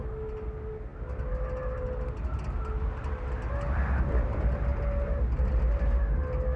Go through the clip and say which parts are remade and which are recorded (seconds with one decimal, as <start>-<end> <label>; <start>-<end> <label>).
0.0-6.6 recorded